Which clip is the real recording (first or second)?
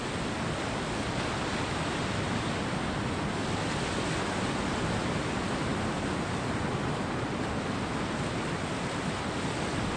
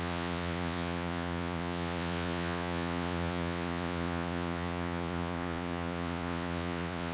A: first